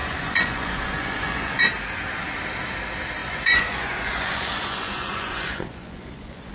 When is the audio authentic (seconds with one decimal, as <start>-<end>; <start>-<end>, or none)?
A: 1.6-3.2